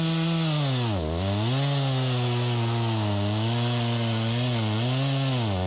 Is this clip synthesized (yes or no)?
no